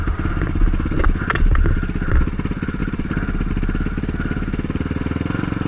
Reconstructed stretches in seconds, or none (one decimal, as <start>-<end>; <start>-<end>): none